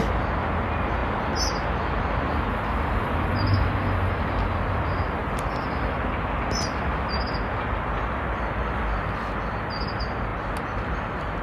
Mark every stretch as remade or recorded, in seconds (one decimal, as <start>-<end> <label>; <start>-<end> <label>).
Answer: 0.0-11.4 recorded